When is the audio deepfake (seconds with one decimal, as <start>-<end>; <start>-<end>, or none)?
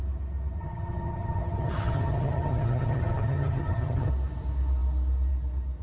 0.6-4.1